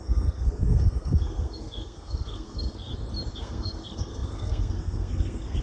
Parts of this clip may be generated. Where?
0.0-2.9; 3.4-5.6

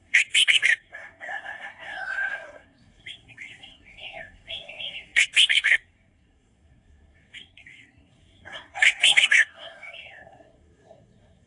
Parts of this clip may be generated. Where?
0.0-11.5

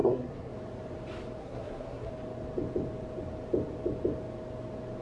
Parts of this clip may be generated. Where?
0.0-0.5; 1.4-2.1

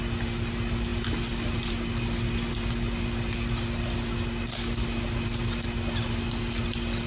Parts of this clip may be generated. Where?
none

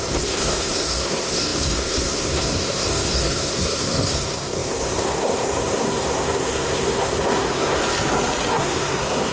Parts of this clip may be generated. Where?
0.0-7.8; 8.5-9.3

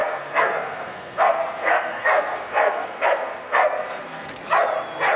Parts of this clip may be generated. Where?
0.0-4.4

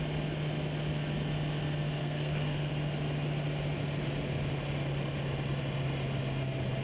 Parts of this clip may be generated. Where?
2.0-2.7